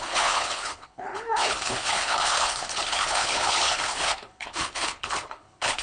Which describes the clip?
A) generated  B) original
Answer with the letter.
A